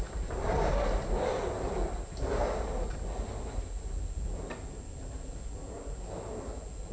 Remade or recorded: recorded